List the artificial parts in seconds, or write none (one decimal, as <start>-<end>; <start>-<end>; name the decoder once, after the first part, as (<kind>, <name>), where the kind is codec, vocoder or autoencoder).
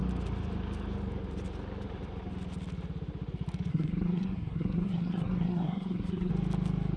3.7-6.3 (codec, SNAC)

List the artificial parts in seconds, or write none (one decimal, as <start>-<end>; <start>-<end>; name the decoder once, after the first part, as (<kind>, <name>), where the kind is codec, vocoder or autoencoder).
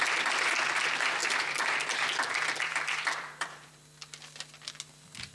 1.2-3.7 (vocoder, BigVGAN v2)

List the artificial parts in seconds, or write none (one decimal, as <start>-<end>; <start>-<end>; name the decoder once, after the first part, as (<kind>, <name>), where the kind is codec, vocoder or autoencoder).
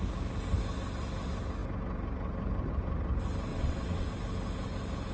3.5-4.1 (vocoder, WaveNeXt)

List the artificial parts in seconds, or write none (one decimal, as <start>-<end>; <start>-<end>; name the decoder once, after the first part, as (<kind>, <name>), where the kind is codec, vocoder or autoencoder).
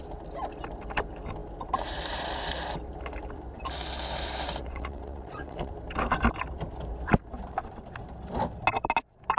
4.6-5.7 (vocoder, WaveNeXt)